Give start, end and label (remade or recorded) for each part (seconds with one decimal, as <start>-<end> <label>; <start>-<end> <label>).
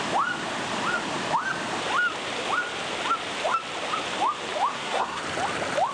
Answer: 0.0-4.7 recorded; 4.7-5.2 remade; 5.2-5.9 recorded